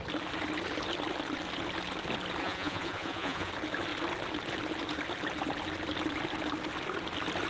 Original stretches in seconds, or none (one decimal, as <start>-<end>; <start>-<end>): 0.0-2.4; 3.5-7.5